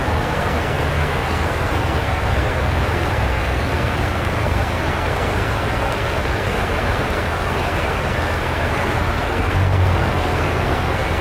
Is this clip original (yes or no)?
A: no